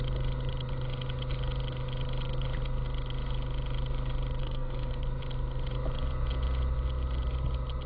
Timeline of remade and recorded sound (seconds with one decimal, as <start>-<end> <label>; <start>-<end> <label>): 0.0-4.4 recorded; 4.4-4.9 remade; 4.9-7.9 recorded